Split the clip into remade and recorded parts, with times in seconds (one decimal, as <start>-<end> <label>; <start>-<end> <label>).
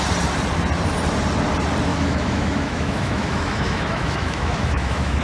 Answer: 0.0-1.9 recorded; 1.9-5.2 remade